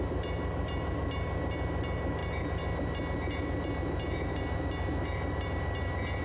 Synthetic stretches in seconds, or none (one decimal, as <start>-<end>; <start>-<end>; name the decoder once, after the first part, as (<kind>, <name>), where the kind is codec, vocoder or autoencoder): none